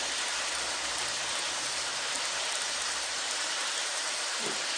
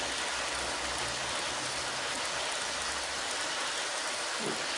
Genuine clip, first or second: second